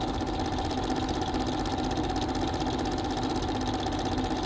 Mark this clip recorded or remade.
recorded